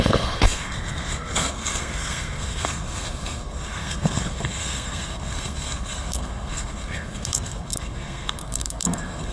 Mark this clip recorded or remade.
remade